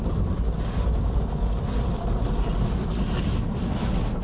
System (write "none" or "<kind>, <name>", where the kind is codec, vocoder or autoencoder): none